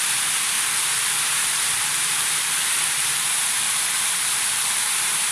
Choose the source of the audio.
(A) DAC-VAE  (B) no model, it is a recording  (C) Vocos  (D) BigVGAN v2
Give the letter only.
D